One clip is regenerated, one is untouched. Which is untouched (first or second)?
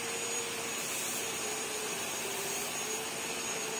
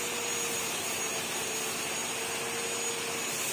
second